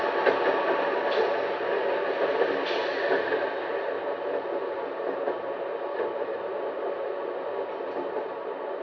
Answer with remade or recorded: recorded